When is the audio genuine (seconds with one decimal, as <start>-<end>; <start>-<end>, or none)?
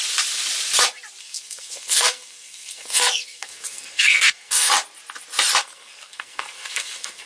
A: 0.0-1.2; 4.7-5.6